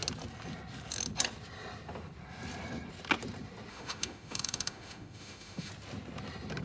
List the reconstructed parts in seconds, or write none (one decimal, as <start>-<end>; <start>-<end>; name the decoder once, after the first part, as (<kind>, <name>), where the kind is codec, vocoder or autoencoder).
3.7-5.7 (autoencoder, DAC-VAE)

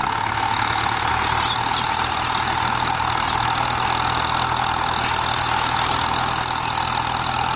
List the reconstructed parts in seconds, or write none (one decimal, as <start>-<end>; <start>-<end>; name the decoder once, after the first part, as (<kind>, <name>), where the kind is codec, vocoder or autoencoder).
none

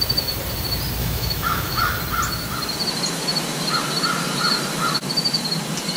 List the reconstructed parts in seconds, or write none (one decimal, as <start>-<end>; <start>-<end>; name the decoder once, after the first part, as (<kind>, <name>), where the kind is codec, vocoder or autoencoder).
1.0-1.8 (autoencoder, DAC-VAE)

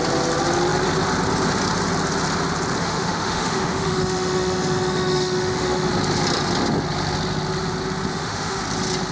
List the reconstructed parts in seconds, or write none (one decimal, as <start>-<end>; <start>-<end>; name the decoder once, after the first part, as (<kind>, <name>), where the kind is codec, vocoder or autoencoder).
2.8-5.9 (autoencoder, DAC-VAE); 8.1-8.6